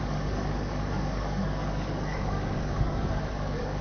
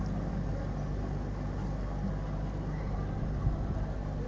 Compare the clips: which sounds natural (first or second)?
second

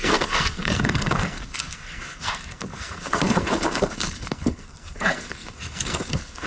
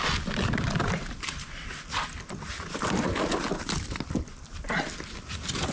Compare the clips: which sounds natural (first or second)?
second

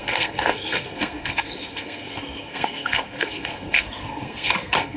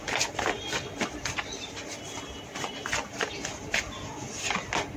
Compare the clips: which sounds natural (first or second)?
second